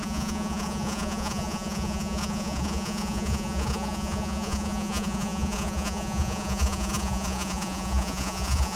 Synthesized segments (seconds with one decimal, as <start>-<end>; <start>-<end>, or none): 0.0-8.8